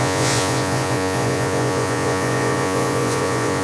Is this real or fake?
fake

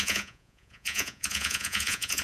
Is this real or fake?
fake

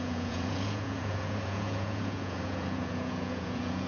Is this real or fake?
fake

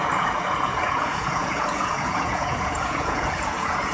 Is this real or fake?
fake